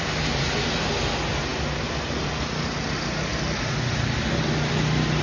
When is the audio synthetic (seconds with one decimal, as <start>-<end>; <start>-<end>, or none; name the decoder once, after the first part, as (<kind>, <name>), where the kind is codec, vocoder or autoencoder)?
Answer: none